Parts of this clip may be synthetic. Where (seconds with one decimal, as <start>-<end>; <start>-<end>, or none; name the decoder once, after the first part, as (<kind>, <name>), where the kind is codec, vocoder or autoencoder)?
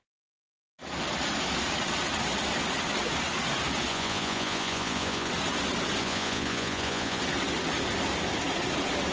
3.9-5.3 (vocoder, Vocos); 6.0-7.2